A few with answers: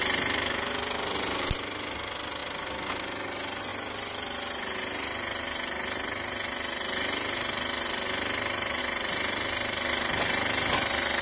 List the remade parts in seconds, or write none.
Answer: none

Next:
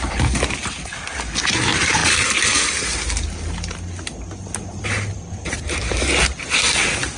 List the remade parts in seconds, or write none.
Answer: none

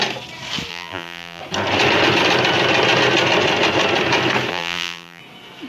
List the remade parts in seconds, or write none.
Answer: 0.7-1.4 (vocoder, BigVGAN v2); 4.5-5.2

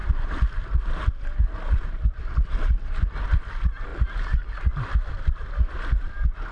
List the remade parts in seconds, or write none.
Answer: none

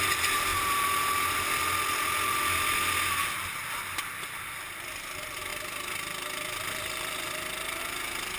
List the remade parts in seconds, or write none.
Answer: none